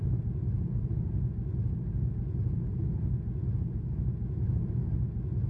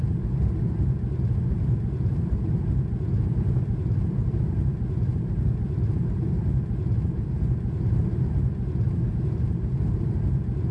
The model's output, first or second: second